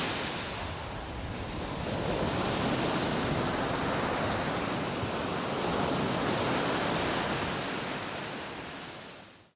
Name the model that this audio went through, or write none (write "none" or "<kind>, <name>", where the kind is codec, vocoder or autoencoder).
none